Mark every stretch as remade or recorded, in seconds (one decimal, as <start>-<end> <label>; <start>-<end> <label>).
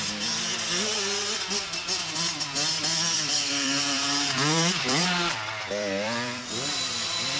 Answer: 0.0-2.8 recorded; 2.8-6.4 remade; 6.4-7.4 recorded